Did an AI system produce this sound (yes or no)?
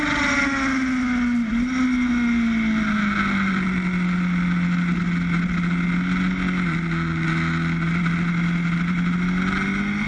no